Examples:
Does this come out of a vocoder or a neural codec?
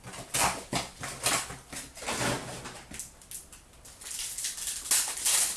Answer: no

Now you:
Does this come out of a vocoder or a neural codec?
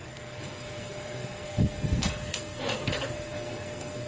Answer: yes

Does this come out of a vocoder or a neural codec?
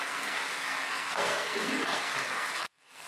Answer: yes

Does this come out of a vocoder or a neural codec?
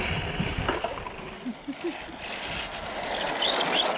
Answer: no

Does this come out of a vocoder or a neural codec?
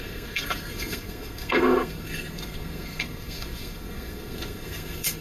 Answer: yes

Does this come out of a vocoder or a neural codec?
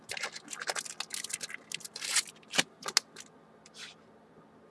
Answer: no